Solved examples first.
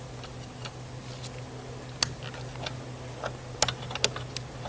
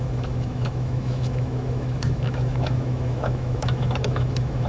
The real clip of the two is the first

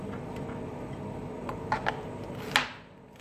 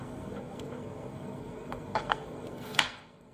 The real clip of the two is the first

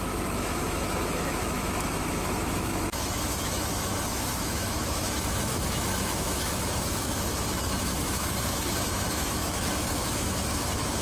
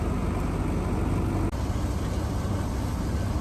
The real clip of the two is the second